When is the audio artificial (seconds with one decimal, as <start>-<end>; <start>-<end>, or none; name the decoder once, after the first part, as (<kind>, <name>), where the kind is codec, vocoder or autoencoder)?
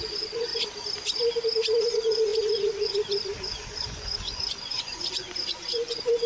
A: 0.0-0.5 (vocoder, Vocos); 1.8-6.3